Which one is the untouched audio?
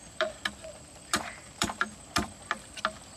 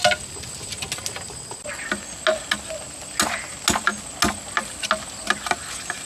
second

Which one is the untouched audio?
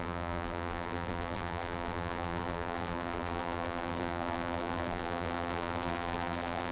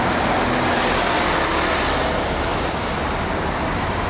second